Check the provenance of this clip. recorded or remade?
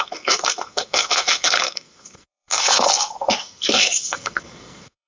remade